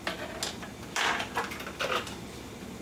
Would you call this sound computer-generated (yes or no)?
no